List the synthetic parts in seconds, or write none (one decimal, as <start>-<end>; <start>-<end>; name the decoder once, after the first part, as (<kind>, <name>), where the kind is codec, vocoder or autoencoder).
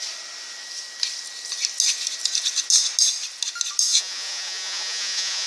3.9-5.5 (vocoder, Vocos)